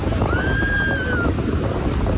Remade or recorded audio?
recorded